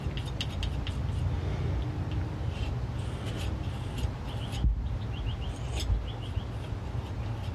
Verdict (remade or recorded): recorded